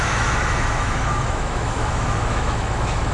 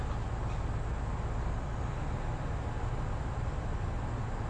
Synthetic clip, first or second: first